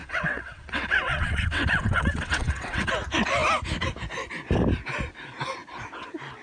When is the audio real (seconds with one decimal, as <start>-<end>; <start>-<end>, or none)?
2.9-6.4